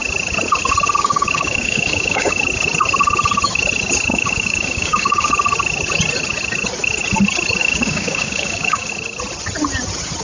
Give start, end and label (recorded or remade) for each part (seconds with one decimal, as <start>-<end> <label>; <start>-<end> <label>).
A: 0.0-1.0 recorded; 1.0-2.4 remade; 2.4-4.1 recorded; 4.1-5.3 remade; 5.3-7.6 recorded; 7.6-8.9 remade; 8.9-10.2 recorded